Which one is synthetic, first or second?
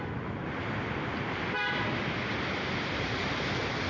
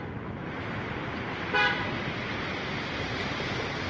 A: second